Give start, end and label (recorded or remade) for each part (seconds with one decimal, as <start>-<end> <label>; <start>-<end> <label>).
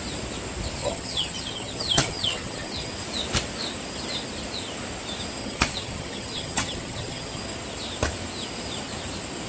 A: 0.0-0.8 recorded; 0.8-2.9 remade; 2.9-5.4 recorded; 5.4-7.4 remade; 7.4-9.5 recorded